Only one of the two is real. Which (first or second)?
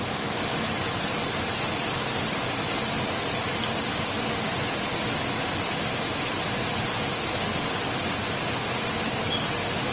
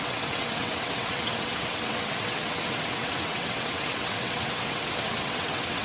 first